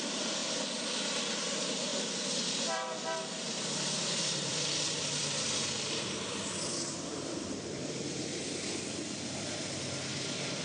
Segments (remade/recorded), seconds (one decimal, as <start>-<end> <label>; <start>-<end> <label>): 0.0-1.9 recorded; 1.9-6.0 remade; 6.0-7.1 recorded; 7.1-8.0 remade; 8.0-10.6 recorded